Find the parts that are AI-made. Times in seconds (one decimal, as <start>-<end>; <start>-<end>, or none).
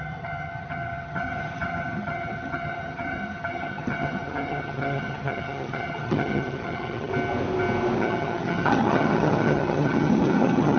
0.0-7.1; 8.0-10.8